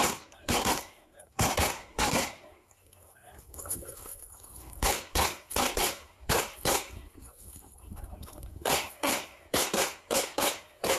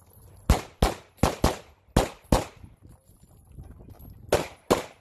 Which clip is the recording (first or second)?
second